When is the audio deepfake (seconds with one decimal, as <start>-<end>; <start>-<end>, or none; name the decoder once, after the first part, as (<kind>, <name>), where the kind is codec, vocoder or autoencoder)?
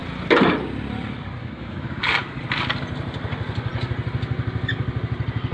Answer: 1.4-2.0 (autoencoder, DAC-VAE)